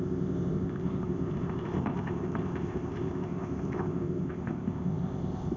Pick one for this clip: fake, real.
fake